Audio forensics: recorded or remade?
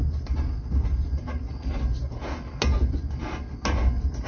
recorded